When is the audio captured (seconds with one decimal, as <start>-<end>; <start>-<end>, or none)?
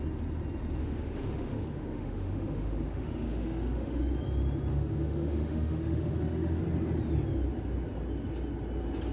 0.0-0.8; 4.0-4.7; 6.6-9.1